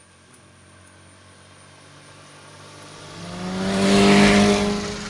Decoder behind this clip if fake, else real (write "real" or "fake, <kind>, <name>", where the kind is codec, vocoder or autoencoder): real